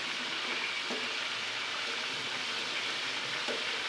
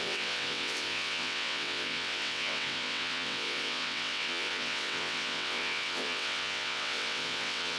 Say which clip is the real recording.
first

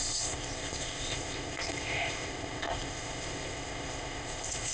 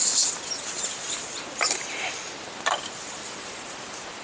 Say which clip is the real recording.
second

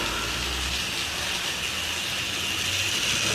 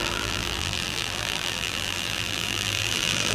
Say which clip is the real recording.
first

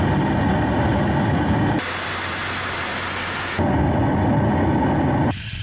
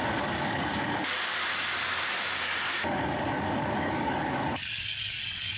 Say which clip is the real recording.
first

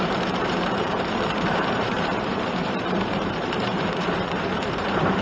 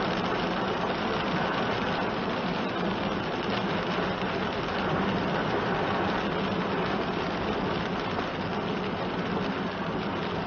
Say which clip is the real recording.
second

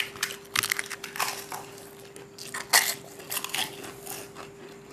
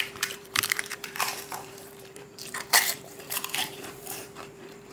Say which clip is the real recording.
first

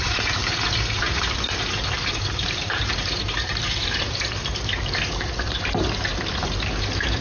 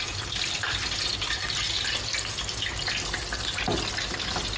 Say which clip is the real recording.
second